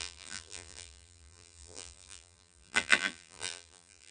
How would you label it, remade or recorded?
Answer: remade